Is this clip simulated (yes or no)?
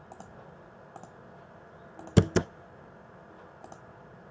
no